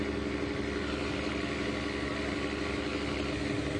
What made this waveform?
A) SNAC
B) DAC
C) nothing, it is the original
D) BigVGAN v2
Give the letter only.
C